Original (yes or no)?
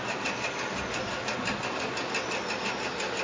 yes